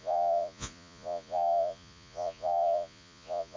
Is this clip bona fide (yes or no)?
no